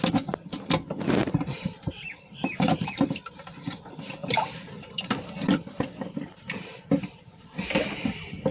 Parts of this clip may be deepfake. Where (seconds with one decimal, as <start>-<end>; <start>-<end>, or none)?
1.2-3.1; 4.2-7.7